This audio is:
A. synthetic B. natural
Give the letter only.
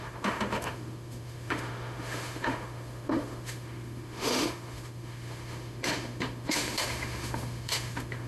A